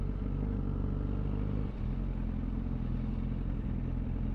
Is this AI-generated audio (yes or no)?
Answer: no